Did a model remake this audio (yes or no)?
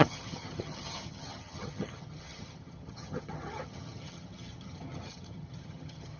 yes